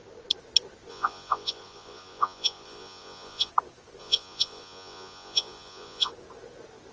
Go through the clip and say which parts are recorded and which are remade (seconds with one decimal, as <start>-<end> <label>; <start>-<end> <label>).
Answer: 0.0-0.9 recorded; 0.9-3.5 remade; 3.5-4.0 recorded; 4.0-6.1 remade; 6.1-6.9 recorded